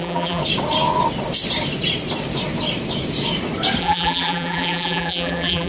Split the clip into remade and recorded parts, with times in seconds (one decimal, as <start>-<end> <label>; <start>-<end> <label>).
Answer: 0.0-0.4 remade; 0.4-3.8 recorded; 3.8-5.7 remade